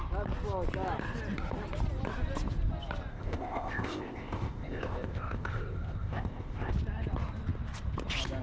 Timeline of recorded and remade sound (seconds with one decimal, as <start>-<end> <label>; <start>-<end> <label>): 0.0-3.1 recorded; 3.1-6.7 remade; 6.7-8.4 recorded